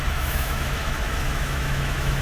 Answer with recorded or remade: remade